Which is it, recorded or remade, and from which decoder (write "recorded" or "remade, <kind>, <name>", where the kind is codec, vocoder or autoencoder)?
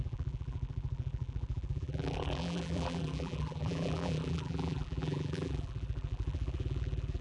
remade, vocoder, BigVGAN v2